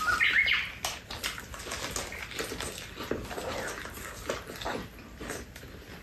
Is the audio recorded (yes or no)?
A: yes